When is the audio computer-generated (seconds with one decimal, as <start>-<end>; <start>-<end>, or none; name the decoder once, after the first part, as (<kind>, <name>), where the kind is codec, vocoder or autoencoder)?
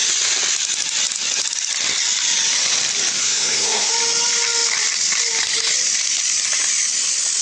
3.2-3.9 (codec, SNAC)